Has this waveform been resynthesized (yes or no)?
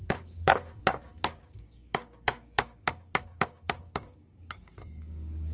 yes